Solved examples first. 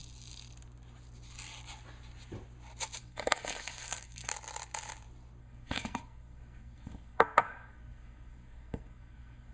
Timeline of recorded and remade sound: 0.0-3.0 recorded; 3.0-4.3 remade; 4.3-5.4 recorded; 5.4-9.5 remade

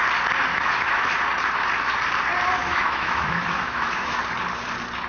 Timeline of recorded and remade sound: 0.0-0.5 recorded; 0.5-1.1 remade; 1.1-2.6 recorded; 2.6-4.2 remade; 4.2-5.1 recorded